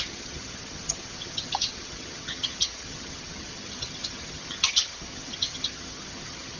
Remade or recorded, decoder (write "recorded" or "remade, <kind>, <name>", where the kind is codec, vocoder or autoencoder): remade, vocoder, HiFi-GAN